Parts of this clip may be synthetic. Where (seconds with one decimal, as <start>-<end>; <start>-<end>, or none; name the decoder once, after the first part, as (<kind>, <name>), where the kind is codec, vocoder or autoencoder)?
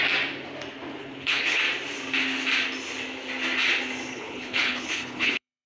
1.0-1.6 (codec, HILCodec); 4.1-5.7